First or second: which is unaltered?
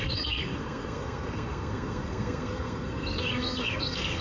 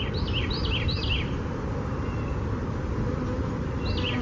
second